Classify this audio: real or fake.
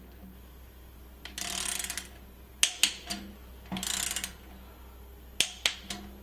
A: real